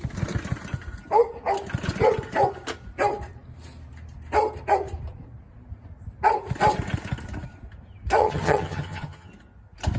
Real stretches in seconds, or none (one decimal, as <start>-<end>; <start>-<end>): 0.0-8.2; 9.3-10.0